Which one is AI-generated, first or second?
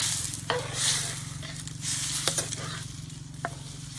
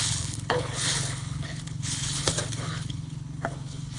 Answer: second